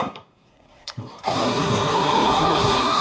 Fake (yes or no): yes